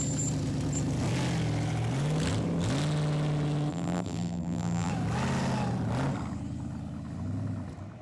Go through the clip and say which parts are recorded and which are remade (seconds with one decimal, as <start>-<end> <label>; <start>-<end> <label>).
0.0-3.7 recorded; 3.7-4.9 remade; 4.9-8.0 recorded